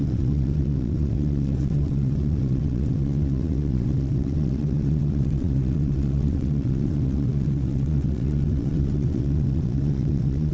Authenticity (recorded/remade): remade